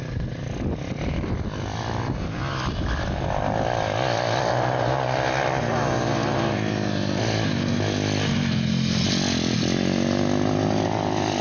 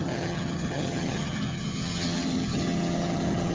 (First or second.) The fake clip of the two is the second